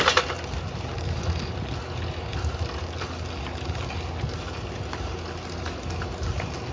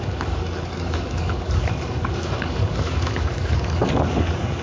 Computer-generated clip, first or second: second